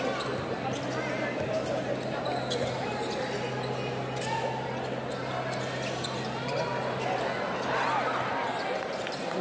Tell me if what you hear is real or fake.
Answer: real